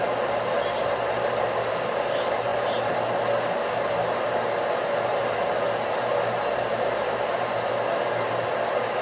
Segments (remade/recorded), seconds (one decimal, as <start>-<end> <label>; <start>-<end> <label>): 0.0-9.0 recorded